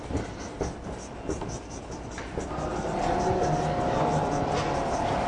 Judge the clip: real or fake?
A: real